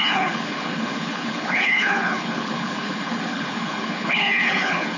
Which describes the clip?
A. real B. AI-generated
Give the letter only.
B